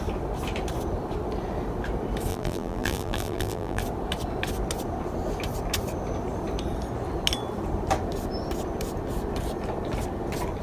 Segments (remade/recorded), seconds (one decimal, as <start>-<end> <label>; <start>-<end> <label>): 0.0-2.3 recorded; 2.3-3.8 remade; 3.8-10.6 recorded